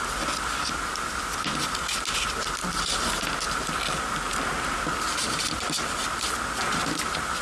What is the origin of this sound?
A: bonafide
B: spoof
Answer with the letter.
A